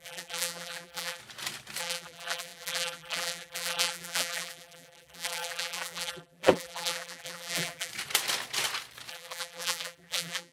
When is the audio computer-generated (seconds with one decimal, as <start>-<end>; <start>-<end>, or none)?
0.0-1.2; 1.8-7.9; 9.1-10.5